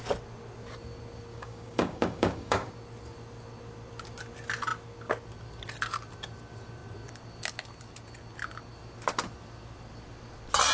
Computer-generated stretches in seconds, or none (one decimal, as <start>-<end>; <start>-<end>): 1.3-2.7